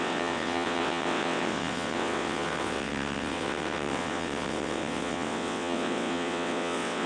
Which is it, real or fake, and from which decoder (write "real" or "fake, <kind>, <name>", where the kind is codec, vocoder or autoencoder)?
fake, vocoder, WaveNeXt